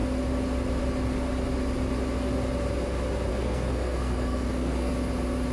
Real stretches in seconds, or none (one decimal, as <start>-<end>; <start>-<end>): 0.0-3.3; 4.9-5.5